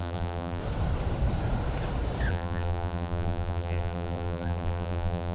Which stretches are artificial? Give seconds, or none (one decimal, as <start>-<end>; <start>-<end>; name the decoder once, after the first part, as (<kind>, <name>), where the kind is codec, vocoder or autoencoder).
0.0-0.6 (vocoder, BigVGAN v2); 2.3-5.3